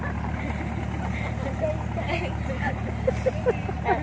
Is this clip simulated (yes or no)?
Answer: no